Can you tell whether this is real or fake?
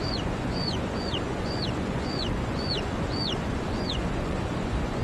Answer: fake